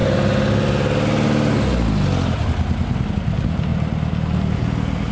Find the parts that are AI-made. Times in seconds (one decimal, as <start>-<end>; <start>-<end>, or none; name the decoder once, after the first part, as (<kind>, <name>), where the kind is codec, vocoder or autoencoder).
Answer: none